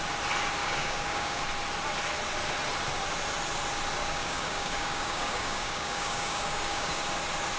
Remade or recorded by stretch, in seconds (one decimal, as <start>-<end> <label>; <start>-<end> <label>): 0.0-0.6 recorded; 0.6-1.4 remade; 1.4-4.0 recorded; 4.0-7.0 remade; 7.0-7.6 recorded